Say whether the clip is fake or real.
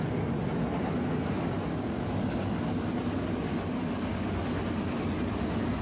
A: real